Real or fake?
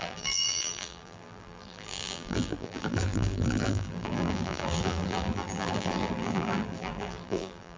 fake